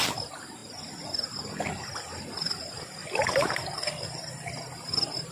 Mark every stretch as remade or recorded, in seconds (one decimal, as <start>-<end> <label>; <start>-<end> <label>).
0.0-5.3 recorded